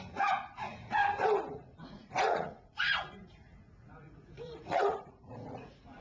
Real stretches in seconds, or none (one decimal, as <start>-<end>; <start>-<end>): 1.0-1.5